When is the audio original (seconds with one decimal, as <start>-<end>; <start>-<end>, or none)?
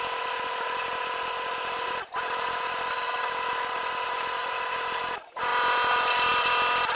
0.0-7.0